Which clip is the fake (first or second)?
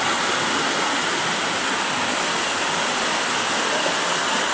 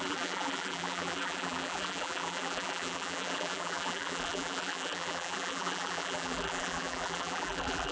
second